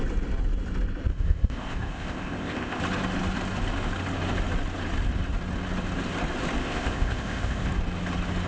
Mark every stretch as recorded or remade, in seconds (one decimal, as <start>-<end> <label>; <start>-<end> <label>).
0.0-1.1 recorded; 1.1-2.8 remade; 2.8-6.6 recorded; 6.6-7.7 remade; 7.7-8.5 recorded